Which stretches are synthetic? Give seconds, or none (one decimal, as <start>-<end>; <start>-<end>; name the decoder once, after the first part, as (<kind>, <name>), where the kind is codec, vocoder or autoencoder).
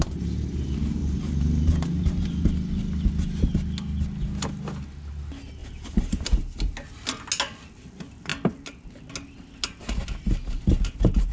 1.0-2.5 (vocoder, BigVGAN v2); 5.6-6.4